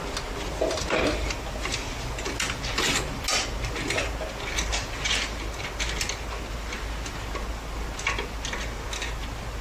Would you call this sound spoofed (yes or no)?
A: no